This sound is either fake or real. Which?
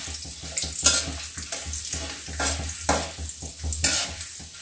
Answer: real